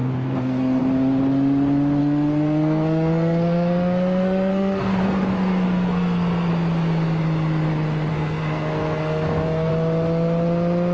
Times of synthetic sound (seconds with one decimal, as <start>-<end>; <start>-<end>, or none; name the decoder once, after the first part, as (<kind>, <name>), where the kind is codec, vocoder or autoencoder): 0.0-0.8 (codec, SNAC); 2.0-6.5; 8.1-9.7